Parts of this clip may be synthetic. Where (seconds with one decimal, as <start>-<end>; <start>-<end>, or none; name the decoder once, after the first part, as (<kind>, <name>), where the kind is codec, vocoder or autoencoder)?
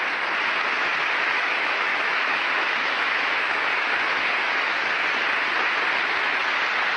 1.3-4.9 (autoencoder, DAC-VAE)